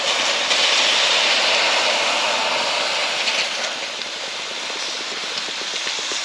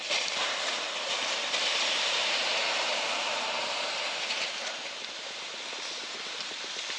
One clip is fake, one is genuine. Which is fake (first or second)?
second